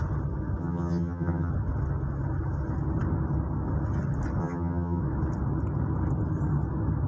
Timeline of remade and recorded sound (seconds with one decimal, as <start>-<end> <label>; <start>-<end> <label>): 0.0-0.6 recorded; 0.6-1.5 remade; 1.5-4.4 recorded; 4.4-5.0 remade; 5.0-7.1 recorded